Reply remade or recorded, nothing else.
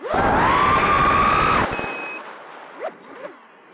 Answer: recorded